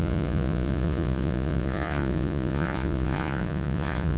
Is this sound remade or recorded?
remade